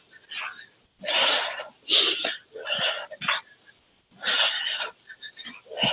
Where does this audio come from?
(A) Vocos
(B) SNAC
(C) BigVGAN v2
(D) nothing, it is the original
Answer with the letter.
D